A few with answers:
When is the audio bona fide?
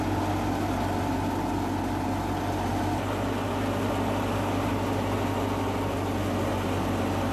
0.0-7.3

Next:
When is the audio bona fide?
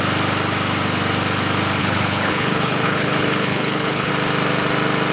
0.0-1.8; 4.1-5.1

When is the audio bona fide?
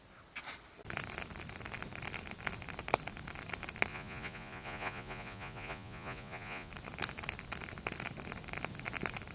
0.0-3.9; 6.7-9.3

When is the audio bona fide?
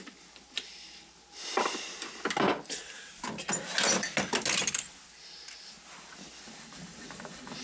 0.0-7.6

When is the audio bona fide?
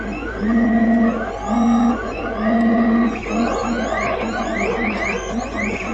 none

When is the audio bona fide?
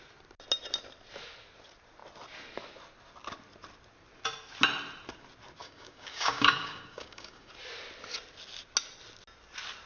0.0-5.6; 7.5-9.9